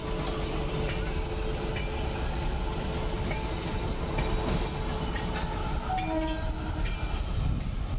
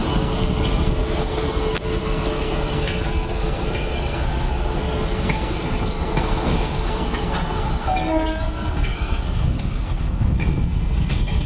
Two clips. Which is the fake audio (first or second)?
second